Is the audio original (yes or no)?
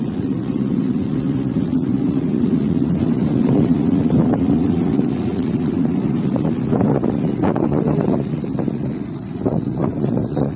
no